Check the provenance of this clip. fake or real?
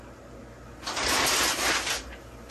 real